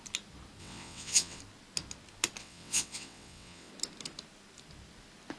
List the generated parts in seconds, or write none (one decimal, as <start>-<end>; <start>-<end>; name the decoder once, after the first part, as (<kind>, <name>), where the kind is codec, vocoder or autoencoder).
0.6-1.4 (vocoder, WaveNeXt); 2.4-3.7